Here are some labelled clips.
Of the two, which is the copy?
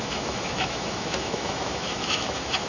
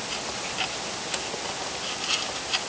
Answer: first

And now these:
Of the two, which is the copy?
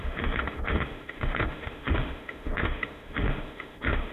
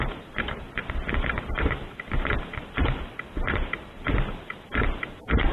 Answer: first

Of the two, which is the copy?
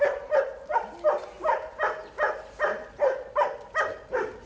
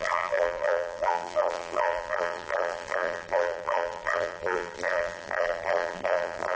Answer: second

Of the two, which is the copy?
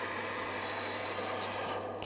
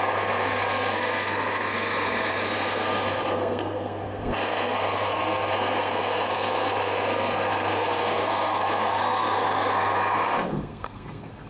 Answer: second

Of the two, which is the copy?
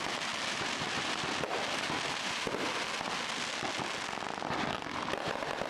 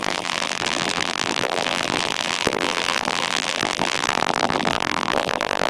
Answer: second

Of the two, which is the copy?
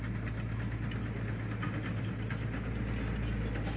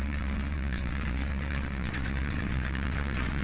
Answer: second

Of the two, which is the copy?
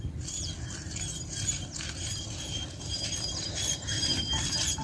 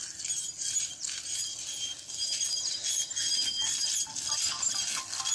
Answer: first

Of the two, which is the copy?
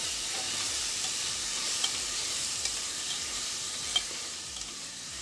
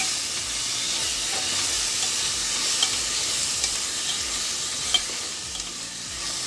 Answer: first